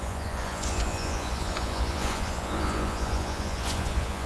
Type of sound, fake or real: fake